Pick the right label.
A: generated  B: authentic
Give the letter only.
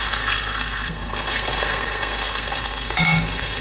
A